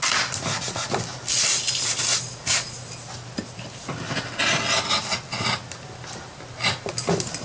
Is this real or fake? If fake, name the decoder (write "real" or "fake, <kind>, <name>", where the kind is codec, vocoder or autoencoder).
real